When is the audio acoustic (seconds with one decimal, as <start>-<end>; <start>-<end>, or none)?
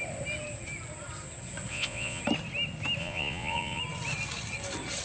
0.0-1.7; 2.2-3.0; 3.8-5.0